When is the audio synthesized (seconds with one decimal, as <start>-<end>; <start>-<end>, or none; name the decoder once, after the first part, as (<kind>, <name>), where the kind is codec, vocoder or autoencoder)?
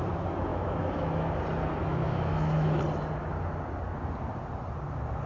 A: 0.5-1.4 (autoencoder, DAC-VAE); 1.8-2.8